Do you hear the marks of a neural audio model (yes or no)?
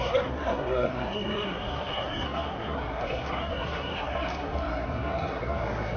yes